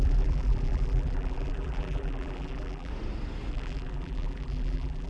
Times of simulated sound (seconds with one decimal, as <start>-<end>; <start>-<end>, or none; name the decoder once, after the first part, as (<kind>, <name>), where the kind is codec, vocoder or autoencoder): 0.0-2.9 (vocoder, BigVGAN v2); 3.5-5.1